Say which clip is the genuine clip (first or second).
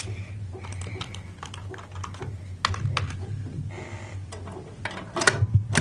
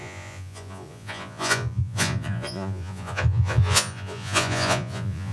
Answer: first